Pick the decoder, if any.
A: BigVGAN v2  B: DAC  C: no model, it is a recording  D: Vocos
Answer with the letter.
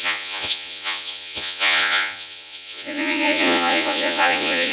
D